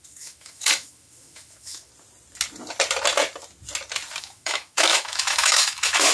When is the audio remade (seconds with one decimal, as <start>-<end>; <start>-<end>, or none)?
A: 0.0-1.9; 4.2-6.1